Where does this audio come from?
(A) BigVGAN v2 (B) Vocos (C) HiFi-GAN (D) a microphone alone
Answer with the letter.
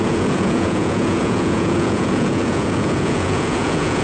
B